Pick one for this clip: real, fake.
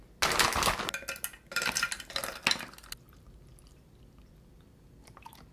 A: real